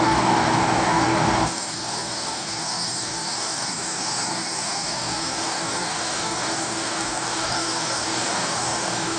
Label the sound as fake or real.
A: fake